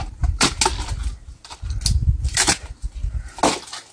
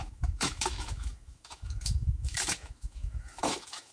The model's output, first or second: second